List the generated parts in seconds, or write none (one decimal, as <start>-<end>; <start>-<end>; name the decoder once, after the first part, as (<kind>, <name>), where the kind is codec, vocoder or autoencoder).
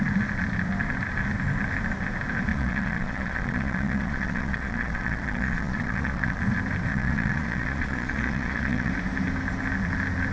2.5-6.4 (vocoder, Vocos); 6.9-8.9